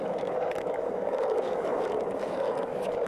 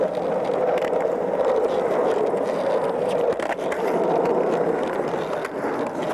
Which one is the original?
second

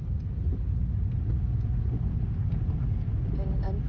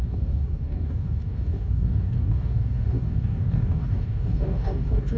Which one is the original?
first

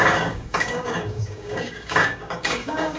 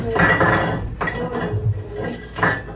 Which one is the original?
second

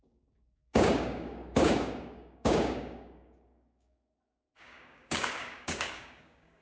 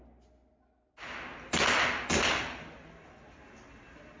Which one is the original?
second